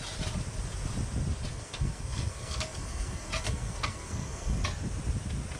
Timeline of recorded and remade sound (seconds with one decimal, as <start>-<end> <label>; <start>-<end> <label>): 0.0-1.5 recorded; 1.5-4.6 remade; 4.6-5.6 recorded

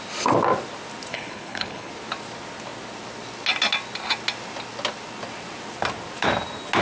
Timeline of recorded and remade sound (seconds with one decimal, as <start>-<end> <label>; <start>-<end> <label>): 0.0-1.1 recorded; 1.1-1.9 remade; 1.9-6.8 recorded

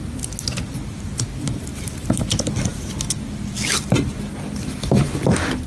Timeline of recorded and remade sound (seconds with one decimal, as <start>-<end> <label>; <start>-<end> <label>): 0.0-1.7 recorded; 1.7-2.3 remade; 2.3-5.7 recorded

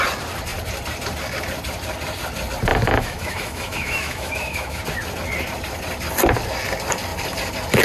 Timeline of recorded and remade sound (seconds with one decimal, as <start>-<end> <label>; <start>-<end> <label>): 0.0-2.7 recorded; 2.7-4.8 remade; 4.8-7.8 recorded